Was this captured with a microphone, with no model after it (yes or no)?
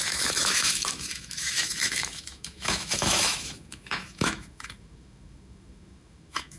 no